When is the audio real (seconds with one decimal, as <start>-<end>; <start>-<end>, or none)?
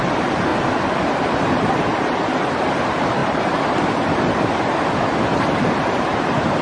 none